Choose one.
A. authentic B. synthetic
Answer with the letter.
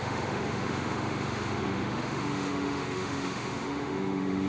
B